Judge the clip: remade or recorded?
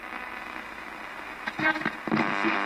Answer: recorded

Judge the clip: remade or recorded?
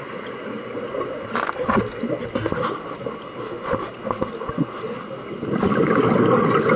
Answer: recorded